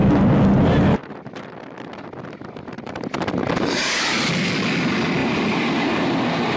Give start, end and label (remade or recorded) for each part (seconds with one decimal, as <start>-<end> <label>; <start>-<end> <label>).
0.0-3.4 recorded; 3.4-4.3 remade; 4.3-5.2 recorded; 5.2-6.6 remade